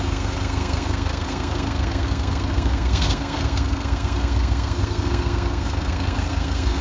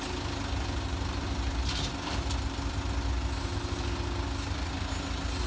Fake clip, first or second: first